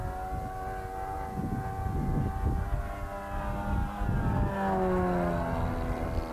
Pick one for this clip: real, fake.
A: real